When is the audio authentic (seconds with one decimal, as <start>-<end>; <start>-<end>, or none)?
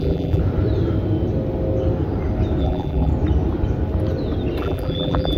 0.4-2.6; 3.1-4.6